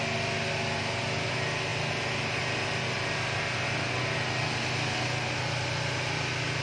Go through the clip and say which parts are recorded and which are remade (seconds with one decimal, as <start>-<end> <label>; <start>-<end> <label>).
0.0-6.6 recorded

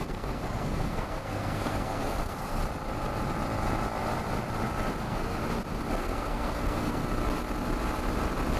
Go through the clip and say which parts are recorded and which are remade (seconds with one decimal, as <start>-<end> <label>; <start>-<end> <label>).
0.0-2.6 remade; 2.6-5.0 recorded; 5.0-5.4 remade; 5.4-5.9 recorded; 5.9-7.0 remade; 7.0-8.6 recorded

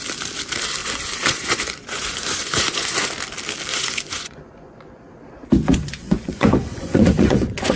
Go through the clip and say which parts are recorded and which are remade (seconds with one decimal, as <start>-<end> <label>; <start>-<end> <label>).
0.0-0.8 recorded; 0.8-3.1 remade; 3.1-3.7 recorded; 3.7-5.0 remade; 5.0-5.7 recorded; 5.7-7.8 remade

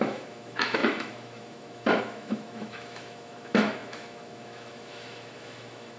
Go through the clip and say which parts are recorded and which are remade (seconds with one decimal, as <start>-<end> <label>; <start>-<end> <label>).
0.0-6.0 remade

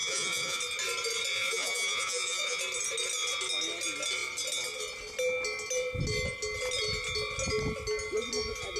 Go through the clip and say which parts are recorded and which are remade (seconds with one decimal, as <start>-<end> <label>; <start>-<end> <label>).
0.0-0.6 remade; 0.6-1.3 recorded; 1.3-2.6 remade; 2.6-8.8 recorded

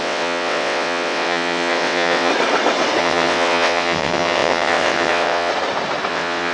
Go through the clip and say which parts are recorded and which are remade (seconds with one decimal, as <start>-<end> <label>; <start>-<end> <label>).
0.0-2.3 remade; 2.3-3.0 recorded; 3.0-5.5 remade; 5.5-6.1 recorded; 6.1-6.5 remade

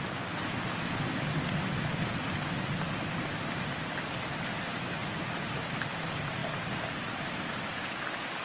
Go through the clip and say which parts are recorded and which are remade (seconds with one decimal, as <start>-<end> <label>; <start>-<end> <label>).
0.0-5.0 recorded; 5.0-5.9 remade; 5.9-8.4 recorded